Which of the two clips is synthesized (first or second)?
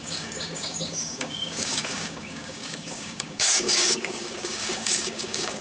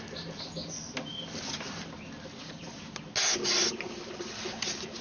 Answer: first